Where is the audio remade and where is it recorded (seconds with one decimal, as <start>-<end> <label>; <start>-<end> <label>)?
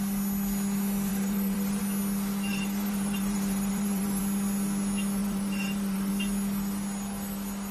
0.0-1.1 recorded; 1.1-1.8 remade; 1.8-2.5 recorded; 2.5-4.2 remade; 4.2-5.2 recorded; 5.2-6.1 remade; 6.1-7.7 recorded